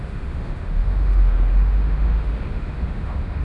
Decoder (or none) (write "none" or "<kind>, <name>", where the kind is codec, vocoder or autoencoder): autoencoder, DAC-VAE